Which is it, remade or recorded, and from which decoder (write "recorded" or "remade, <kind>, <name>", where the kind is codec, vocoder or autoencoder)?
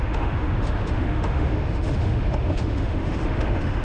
remade, autoencoder, DAC-VAE